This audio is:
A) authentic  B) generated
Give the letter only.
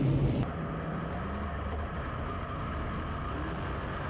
A